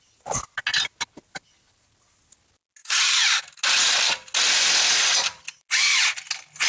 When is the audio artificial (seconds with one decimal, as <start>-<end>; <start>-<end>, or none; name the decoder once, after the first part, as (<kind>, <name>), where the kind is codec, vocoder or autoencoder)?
none